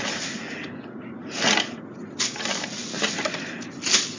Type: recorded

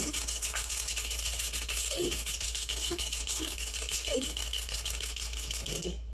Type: remade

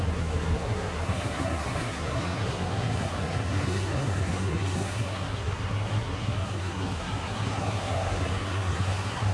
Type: remade